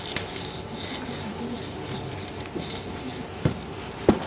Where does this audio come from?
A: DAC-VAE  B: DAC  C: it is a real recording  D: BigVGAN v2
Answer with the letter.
C